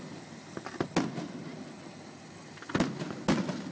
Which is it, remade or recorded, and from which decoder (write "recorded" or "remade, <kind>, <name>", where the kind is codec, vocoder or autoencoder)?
recorded